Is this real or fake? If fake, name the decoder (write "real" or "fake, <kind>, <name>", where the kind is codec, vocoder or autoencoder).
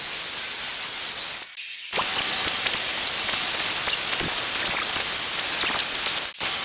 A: real